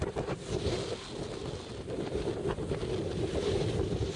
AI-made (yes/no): no